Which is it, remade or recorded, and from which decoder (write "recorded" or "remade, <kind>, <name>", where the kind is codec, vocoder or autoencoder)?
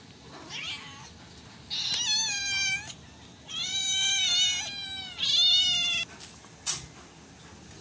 recorded